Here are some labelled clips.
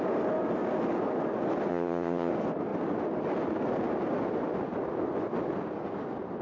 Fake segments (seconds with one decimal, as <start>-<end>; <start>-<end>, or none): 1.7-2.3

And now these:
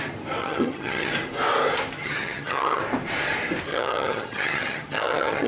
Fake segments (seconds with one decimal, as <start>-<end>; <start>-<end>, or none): 0.4-1.1; 2.0-2.8; 3.7-5.5

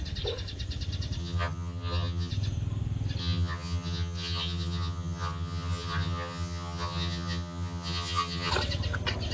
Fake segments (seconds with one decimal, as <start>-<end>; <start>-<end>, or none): 1.2-2.3; 3.2-8.5

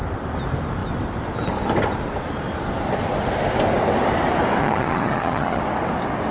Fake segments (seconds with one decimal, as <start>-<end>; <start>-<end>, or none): 4.6-5.6

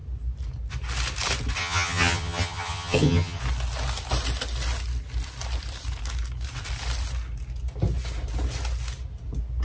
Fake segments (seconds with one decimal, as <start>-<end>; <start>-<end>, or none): 1.6-3.4